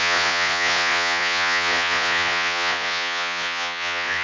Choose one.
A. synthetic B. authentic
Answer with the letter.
A